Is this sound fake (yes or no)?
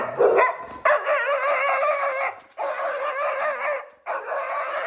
no